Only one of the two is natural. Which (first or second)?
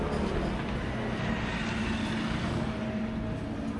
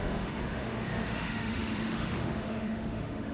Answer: first